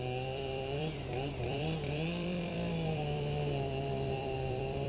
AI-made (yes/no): yes